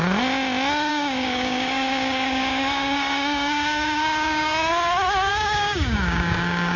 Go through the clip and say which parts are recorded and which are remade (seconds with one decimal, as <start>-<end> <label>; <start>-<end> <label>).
0.0-0.9 recorded; 0.9-4.7 remade; 4.7-5.3 recorded; 5.3-6.8 remade